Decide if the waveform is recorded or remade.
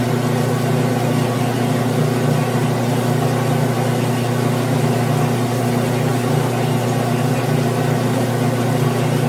recorded